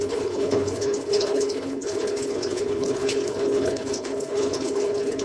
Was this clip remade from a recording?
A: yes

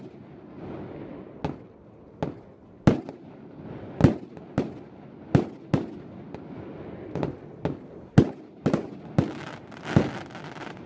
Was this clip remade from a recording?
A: no